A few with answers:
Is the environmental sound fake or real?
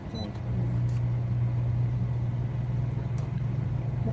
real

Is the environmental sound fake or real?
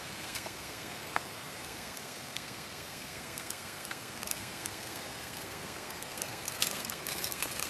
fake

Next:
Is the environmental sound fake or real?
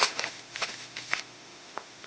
fake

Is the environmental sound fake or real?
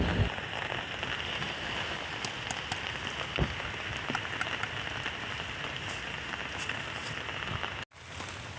real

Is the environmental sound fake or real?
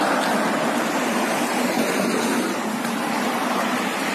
real